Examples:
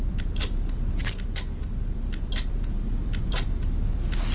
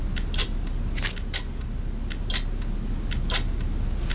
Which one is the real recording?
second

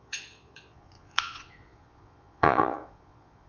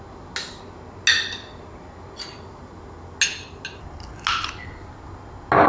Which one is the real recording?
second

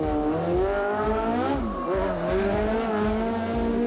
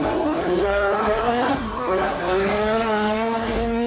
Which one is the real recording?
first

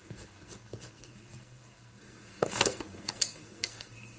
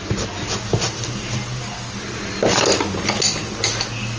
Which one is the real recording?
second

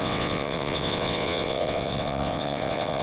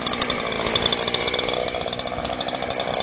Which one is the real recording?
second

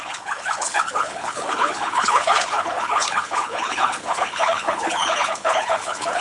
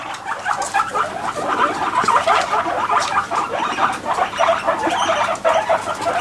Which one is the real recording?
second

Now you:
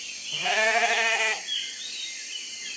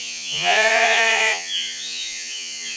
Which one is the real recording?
first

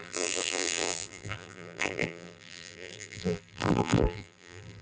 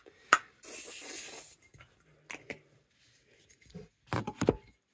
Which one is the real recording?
second